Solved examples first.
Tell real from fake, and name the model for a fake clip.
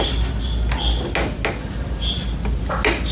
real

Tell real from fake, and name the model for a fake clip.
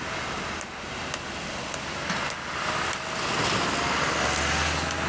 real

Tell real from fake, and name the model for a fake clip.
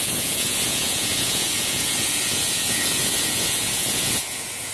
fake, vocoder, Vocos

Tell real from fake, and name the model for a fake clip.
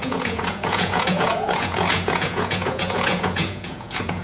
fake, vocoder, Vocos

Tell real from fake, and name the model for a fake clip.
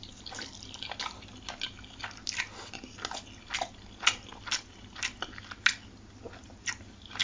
real